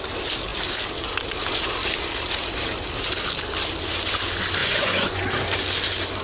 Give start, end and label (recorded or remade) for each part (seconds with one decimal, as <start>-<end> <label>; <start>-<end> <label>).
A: 0.0-4.6 recorded; 4.6-5.2 remade; 5.2-6.2 recorded